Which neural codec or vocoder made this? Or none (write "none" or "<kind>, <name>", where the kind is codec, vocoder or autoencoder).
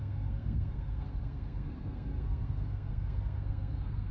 codec, SNAC